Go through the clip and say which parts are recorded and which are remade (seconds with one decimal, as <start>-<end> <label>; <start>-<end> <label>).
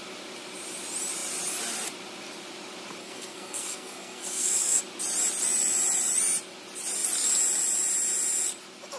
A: 0.0-3.0 recorded; 3.0-4.8 remade; 4.8-9.0 recorded